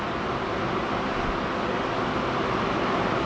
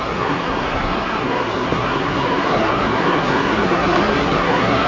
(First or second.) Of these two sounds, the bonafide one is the first